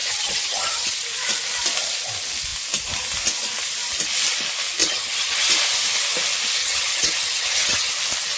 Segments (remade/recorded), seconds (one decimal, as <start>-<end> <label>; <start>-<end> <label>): 0.0-0.9 remade; 0.9-4.8 recorded; 4.8-5.5 remade; 5.5-6.6 recorded; 6.6-7.9 remade; 7.9-8.4 recorded